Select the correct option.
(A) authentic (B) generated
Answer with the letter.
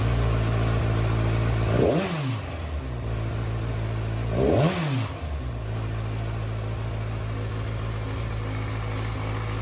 A